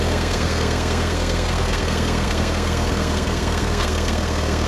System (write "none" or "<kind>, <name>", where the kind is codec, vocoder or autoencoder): codec, SNAC